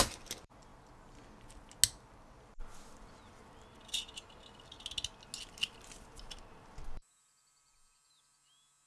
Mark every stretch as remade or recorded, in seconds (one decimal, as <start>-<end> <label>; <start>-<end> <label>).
0.0-8.9 recorded

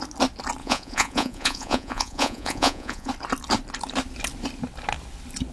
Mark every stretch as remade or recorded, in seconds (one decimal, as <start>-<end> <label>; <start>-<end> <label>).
0.0-0.6 recorded; 0.6-3.1 remade; 3.1-5.5 recorded